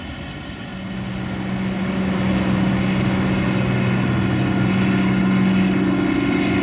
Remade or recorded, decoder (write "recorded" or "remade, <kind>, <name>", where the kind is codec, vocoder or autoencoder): recorded